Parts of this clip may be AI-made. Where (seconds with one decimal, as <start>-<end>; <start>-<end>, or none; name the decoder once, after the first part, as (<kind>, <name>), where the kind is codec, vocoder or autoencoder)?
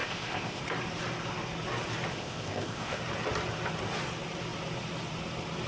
0.0-0.6 (codec, ZipCodec); 2.1-3.0